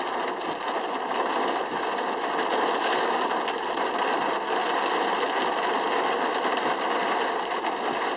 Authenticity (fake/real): real